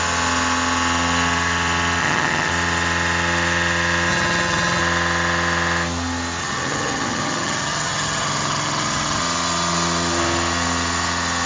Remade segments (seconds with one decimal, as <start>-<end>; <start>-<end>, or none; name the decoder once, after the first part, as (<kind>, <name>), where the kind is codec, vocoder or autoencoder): 2.0-2.5 (vocoder, HiFi-GAN); 4.1-4.8; 6.4-9.2